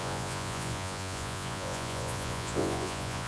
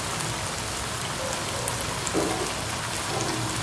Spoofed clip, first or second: first